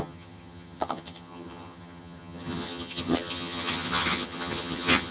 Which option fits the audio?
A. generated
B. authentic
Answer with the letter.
A